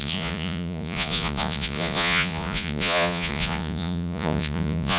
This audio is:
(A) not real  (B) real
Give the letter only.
A